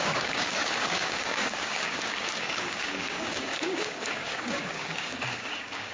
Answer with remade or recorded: remade